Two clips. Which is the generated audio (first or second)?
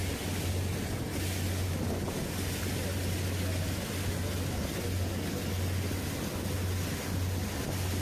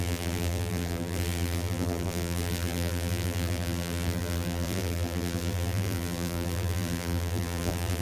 second